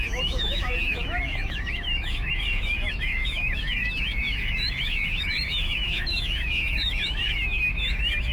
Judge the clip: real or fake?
fake